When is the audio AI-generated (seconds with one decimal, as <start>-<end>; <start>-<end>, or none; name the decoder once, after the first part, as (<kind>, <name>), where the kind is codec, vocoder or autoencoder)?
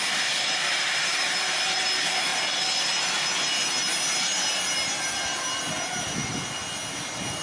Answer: none